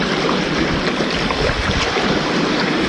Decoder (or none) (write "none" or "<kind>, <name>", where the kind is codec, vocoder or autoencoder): none